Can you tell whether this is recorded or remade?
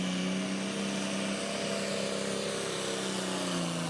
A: recorded